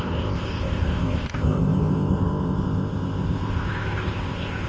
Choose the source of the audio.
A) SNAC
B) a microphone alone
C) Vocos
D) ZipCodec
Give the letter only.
D